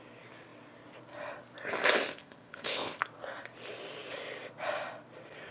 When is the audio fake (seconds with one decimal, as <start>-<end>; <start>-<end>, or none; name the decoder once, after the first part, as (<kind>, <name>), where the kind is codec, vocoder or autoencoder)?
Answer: 2.1-3.0 (codec, ZipCodec)